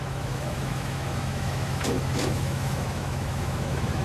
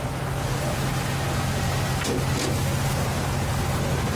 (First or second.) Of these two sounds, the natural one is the second